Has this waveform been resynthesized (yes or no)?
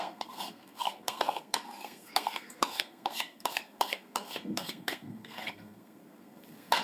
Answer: yes